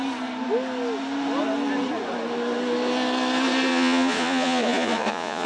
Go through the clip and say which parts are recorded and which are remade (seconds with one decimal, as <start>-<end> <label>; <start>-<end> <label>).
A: 0.0-3.7 recorded; 3.7-5.5 remade